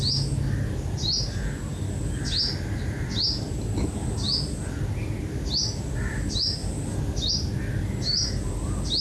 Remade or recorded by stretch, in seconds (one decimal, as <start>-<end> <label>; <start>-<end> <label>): 0.0-9.0 recorded